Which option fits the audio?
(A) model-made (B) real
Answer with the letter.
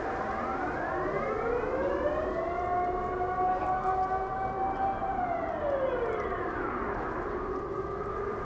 B